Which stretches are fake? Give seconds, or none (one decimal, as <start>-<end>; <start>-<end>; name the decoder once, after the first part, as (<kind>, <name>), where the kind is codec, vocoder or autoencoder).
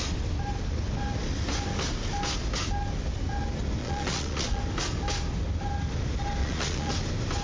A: 3.8-4.6 (vocoder, Vocos); 6.4-6.9